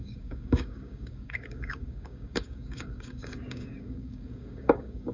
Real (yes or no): no